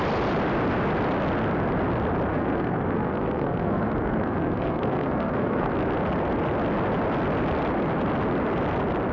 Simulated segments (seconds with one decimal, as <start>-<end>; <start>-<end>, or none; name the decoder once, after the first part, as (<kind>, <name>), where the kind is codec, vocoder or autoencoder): 2.3-5.7 (codec, SNAC)